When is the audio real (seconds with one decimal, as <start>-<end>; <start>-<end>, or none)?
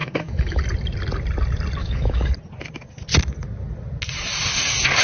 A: 0.6-1.8; 2.3-5.0